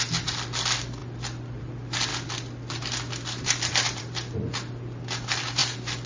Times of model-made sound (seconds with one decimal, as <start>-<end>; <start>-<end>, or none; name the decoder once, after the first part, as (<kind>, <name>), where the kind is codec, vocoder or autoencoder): 0.0-5.6 (vocoder, BigVGAN v2)